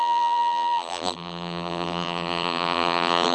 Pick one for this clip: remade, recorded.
remade